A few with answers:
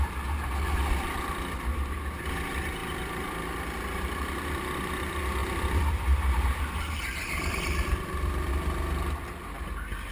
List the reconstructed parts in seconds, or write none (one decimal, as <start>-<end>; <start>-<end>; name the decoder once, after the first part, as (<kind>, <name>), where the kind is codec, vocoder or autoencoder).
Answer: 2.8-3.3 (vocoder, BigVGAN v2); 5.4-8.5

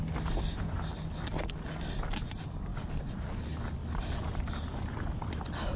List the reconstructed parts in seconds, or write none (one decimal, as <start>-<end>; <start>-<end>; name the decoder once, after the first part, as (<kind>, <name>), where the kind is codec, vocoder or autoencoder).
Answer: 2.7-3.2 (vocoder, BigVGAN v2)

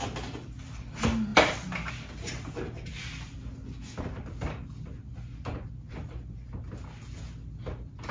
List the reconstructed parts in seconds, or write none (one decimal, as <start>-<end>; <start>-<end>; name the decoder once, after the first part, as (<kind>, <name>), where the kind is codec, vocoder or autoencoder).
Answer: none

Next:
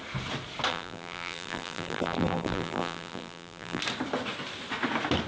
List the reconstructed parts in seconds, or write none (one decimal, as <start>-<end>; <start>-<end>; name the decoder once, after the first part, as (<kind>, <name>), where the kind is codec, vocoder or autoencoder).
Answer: 0.7-3.8 (vocoder, BigVGAN v2)

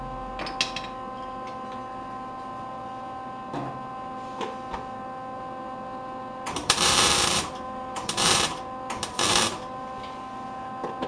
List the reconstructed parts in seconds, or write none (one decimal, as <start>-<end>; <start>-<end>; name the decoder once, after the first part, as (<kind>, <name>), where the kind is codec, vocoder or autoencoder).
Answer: 6.6-8.6 (vocoder, BigVGAN v2)

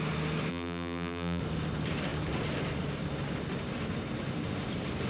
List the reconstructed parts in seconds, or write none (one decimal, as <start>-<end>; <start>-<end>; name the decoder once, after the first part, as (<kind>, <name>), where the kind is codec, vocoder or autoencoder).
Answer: 0.5-1.4 (vocoder, BigVGAN v2)